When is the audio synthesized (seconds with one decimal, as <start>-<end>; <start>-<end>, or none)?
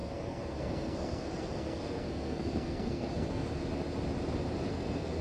0.0-3.6; 4.7-5.2